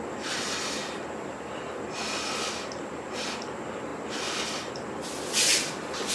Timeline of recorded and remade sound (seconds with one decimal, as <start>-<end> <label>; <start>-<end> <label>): 0.0-6.1 recorded